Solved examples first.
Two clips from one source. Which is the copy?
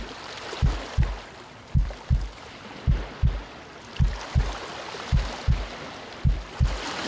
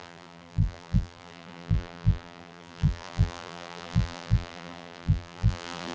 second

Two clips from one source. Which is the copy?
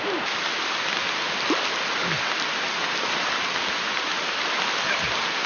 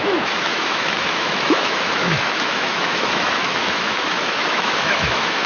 second